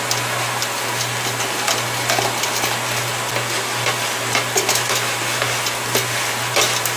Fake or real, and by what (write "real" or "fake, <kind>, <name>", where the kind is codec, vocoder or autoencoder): real